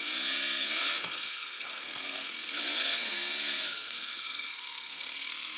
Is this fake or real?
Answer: fake